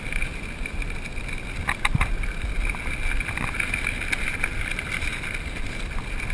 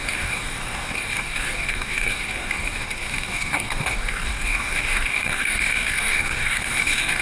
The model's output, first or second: second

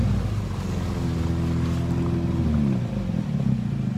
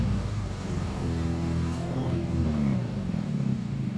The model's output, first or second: second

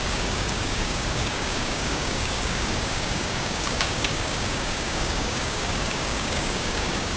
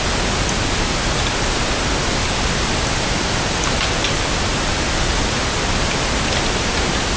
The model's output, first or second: first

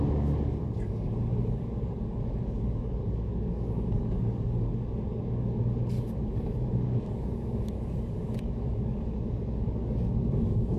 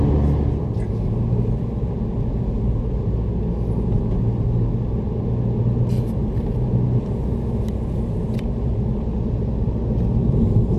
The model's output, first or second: first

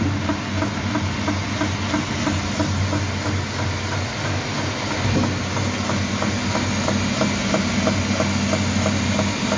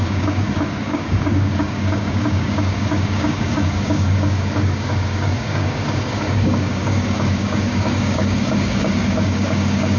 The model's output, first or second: second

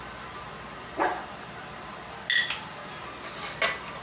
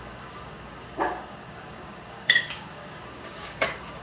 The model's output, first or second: second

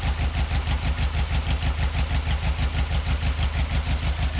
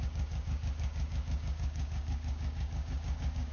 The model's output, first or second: second